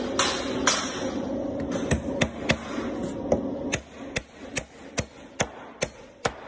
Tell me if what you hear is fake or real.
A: real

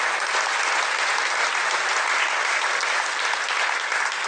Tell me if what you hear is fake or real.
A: real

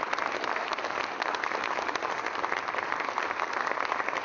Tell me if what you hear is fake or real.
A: real